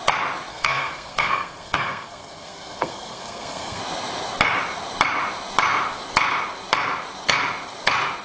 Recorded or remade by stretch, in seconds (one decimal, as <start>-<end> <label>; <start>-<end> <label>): 0.0-0.5 recorded; 0.5-3.8 remade; 3.8-8.2 recorded